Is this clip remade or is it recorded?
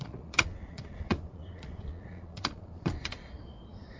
remade